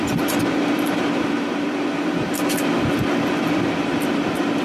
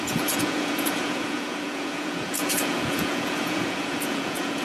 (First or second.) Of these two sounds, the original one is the first